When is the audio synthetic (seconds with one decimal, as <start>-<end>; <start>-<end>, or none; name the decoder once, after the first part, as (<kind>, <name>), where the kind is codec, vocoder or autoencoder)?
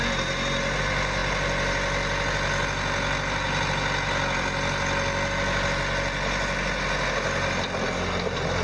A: none